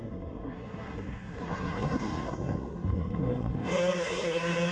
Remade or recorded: remade